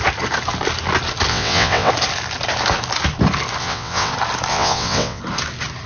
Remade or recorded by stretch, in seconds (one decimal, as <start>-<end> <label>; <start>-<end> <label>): 0.0-1.3 recorded; 1.3-1.9 remade; 1.9-3.6 recorded; 3.6-4.1 remade; 4.1-4.5 recorded; 4.5-5.2 remade; 5.2-5.9 recorded